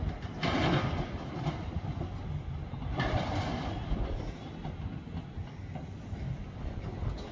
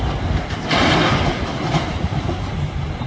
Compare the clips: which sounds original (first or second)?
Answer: first